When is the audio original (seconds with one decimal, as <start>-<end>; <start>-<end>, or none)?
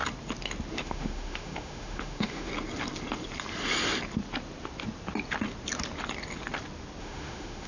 0.0-0.8; 2.5-7.0